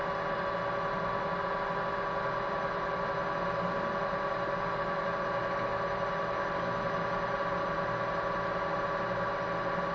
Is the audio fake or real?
real